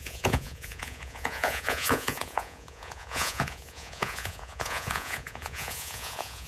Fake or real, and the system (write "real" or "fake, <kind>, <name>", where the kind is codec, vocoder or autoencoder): fake, vocoder, Vocos